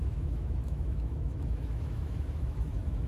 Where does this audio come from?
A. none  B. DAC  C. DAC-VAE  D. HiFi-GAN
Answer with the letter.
C